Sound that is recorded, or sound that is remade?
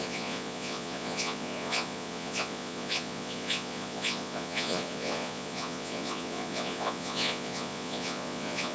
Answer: remade